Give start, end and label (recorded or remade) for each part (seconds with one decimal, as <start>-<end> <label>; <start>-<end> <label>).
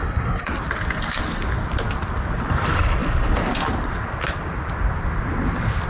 0.0-0.6 remade; 0.6-5.9 recorded